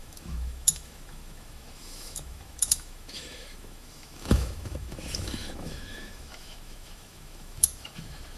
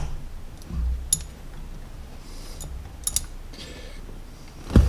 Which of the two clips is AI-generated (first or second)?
first